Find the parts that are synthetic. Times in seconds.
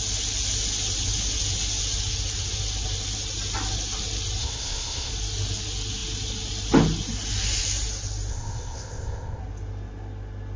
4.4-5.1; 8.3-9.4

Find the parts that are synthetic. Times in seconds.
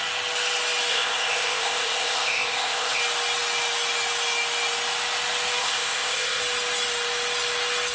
0.9-3.0; 5.6-6.4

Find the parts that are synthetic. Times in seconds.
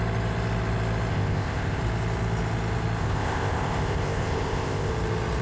1.1-1.8; 3.0-4.9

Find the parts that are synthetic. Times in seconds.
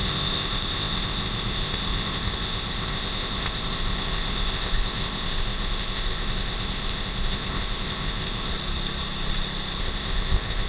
0.0-8.5; 9.8-10.7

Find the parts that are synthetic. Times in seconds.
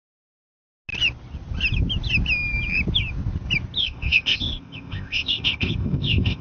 3.8-6.4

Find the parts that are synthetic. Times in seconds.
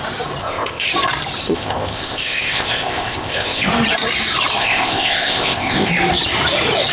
0.4-0.9; 1.4-3.7; 4.6-5.9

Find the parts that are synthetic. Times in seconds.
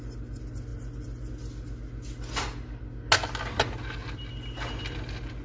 none